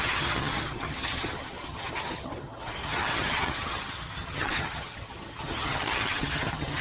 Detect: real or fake fake